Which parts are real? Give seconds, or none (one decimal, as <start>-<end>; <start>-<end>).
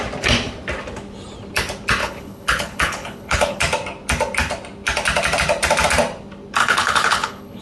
0.0-2.0; 3.6-6.6